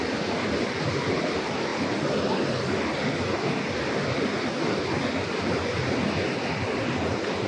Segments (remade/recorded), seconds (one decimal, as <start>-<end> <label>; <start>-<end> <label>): 0.0-7.5 recorded